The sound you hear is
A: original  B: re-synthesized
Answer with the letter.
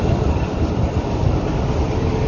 A